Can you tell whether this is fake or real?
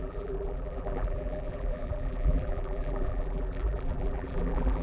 fake